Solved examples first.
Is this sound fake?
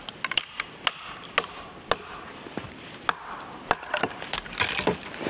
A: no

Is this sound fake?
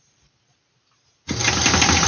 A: yes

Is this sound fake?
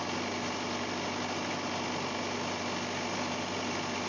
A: no